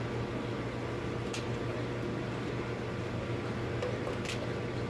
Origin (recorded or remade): recorded